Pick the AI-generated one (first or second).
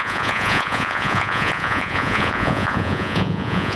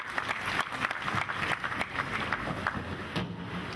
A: first